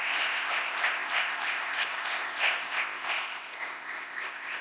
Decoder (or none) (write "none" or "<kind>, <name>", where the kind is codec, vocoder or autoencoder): codec, ZipCodec